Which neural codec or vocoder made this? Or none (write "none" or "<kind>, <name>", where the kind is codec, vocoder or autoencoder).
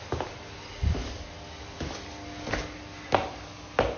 none